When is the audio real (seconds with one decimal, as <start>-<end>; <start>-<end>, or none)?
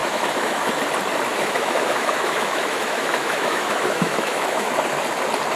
0.8-1.3; 4.7-5.6